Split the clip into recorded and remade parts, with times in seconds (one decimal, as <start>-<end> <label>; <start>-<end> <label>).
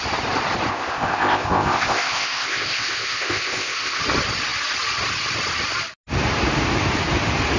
0.0-0.7 recorded; 0.7-4.0 remade; 4.0-7.6 recorded